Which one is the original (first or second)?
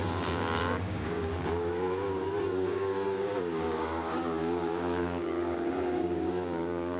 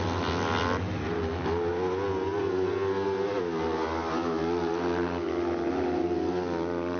second